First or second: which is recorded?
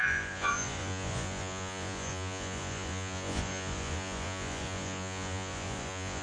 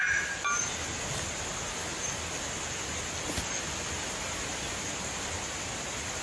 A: second